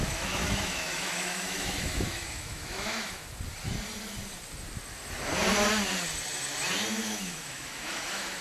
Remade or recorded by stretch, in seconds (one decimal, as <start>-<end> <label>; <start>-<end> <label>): 0.0-3.2 remade; 3.2-6.9 recorded; 6.9-8.4 remade